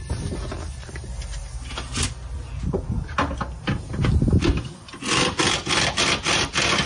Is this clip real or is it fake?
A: real